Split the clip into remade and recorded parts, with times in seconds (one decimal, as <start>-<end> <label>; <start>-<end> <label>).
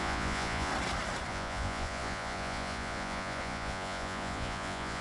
0.0-0.7 remade; 0.7-1.3 recorded; 1.3-5.0 remade